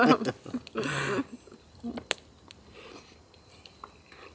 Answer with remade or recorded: recorded